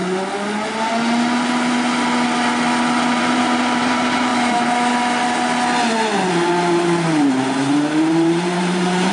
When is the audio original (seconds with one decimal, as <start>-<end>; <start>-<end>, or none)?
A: 0.0-3.2; 4.3-7.3

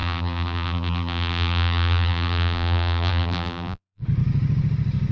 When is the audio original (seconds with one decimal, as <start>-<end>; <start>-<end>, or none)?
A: 4.0-5.1

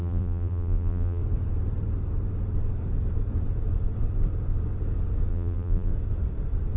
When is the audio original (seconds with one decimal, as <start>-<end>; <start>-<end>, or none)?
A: 1.2-5.3; 5.9-6.8

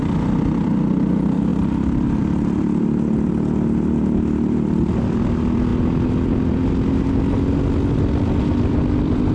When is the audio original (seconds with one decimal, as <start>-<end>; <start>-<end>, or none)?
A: 1.5-2.2; 5.7-8.1

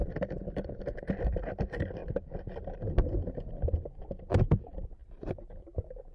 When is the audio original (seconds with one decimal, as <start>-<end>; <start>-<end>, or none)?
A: 0.8-5.0; 5.6-6.1

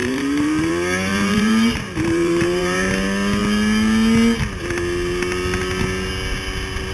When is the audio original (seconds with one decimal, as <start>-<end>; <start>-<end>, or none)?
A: 0.7-1.1; 2.9-6.9